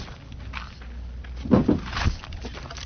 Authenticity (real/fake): real